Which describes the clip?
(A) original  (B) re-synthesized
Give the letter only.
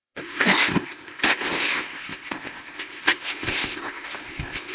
B